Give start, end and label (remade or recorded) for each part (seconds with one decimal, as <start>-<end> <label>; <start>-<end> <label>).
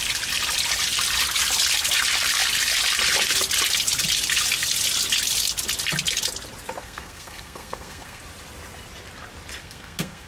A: 0.0-6.8 recorded; 6.8-8.2 remade; 8.2-9.6 recorded; 9.6-10.3 remade